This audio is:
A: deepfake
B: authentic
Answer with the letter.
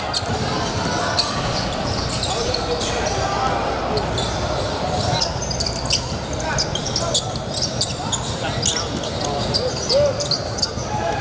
B